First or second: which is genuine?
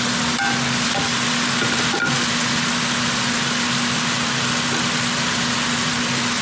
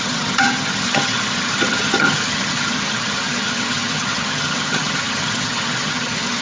first